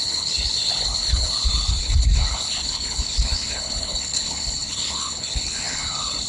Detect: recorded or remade remade